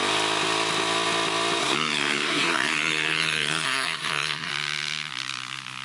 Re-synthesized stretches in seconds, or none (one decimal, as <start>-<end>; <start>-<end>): 1.6-4.5

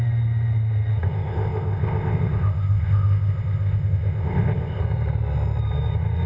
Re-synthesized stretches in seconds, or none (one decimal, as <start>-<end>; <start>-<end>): 1.0-4.8

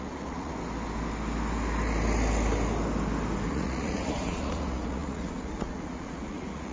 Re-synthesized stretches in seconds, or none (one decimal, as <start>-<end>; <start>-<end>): 0.0-0.5; 3.5-6.7